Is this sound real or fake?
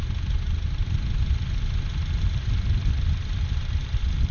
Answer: real